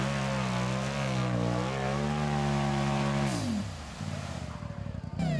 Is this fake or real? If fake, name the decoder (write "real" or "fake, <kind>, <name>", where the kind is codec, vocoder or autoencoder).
real